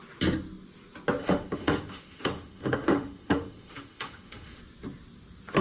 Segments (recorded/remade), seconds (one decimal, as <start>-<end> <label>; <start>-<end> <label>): 0.0-1.2 recorded; 1.2-4.6 remade; 4.6-5.6 recorded